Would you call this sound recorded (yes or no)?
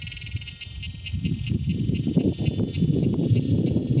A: yes